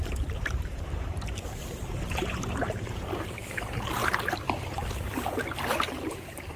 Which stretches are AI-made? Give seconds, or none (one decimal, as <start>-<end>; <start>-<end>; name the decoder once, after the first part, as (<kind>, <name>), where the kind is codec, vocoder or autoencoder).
0.0-4.0 (vocoder, BigVGAN v2); 5.6-6.6